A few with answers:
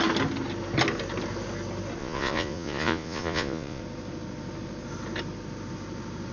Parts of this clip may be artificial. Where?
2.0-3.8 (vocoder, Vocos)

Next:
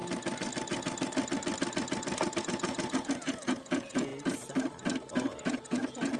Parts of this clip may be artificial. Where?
2.4-4.1 (vocoder, Vocos); 5.5-6.2

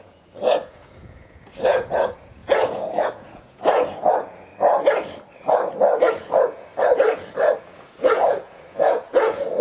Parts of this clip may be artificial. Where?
0.0-4.5 (vocoder, Vocos); 6.1-6.7; 7.6-9.6

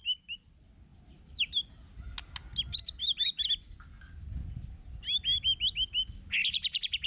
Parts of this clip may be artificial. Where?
none

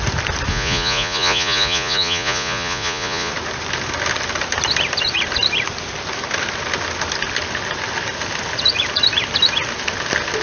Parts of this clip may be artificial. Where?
0.5-3.3 (vocoder, Vocos)

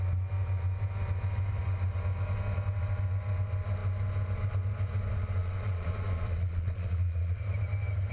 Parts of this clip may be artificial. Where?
5.4-7.4 (vocoder, Vocos)

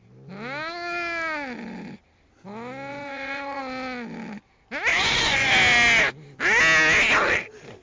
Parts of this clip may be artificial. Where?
2.9-3.6 (vocoder, Vocos); 4.9-5.5